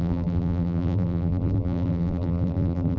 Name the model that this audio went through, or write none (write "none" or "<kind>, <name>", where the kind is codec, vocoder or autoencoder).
vocoder, BigVGAN v2